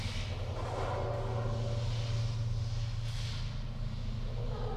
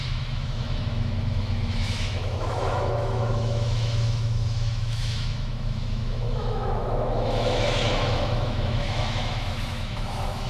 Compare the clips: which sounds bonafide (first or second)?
first